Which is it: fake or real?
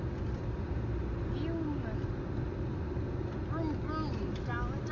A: real